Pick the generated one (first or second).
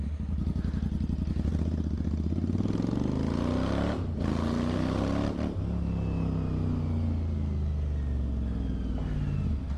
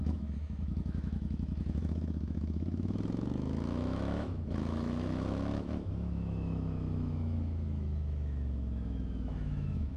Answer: second